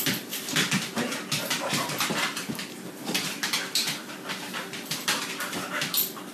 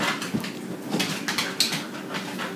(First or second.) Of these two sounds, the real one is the second